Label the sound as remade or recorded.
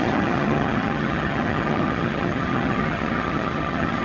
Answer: remade